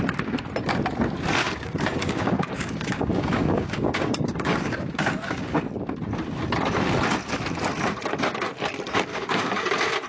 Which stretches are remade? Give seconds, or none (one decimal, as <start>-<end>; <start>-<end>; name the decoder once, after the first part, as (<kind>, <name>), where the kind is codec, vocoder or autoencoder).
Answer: 1.4-5.6 (codec, DAC); 9.1-9.7